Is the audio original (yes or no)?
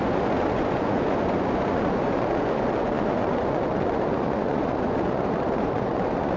no